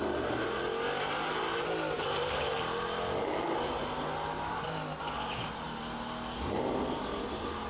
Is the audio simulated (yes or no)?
no